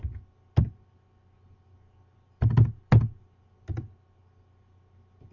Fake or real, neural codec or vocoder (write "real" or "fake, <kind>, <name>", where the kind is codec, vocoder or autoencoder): real